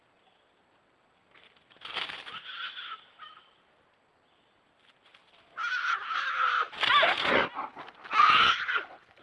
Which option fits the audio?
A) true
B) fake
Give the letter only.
A